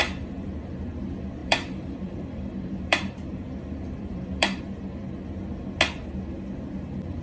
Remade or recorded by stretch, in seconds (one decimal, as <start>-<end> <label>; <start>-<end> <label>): 0.0-1.4 recorded; 1.4-4.6 remade; 4.6-7.2 recorded